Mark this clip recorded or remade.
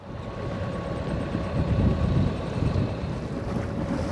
recorded